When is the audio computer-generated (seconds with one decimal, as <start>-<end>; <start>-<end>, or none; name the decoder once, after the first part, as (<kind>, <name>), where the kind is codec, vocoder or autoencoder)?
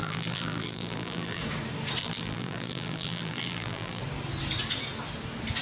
0.0-1.4 (vocoder, BigVGAN v2); 2.0-4.0